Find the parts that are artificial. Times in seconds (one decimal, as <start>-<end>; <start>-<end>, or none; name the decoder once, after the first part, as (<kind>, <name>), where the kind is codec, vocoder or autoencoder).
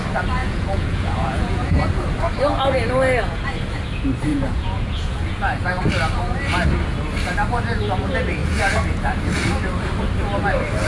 0.4-1.8 (vocoder, Vocos); 4.3-5.8; 8.4-9.1